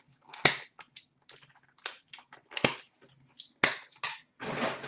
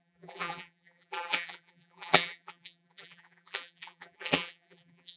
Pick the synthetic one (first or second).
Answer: second